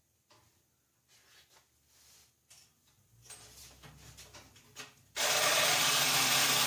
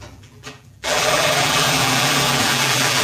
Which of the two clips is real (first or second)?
first